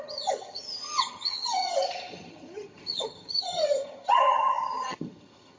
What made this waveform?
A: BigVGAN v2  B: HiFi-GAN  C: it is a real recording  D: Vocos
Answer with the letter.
B